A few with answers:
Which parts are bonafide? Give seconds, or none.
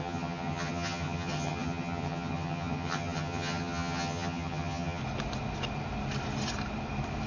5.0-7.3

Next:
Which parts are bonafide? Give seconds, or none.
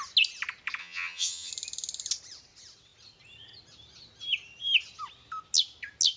0.0-0.8; 1.5-6.2